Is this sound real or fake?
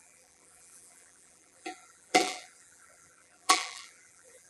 fake